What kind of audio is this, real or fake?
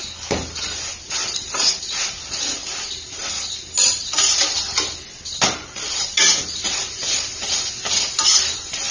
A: real